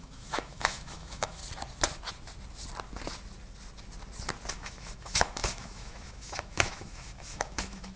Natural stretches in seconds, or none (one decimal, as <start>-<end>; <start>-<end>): 1.4-4.5